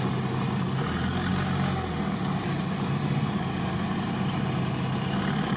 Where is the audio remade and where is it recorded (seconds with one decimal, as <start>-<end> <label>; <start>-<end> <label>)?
0.0-5.6 recorded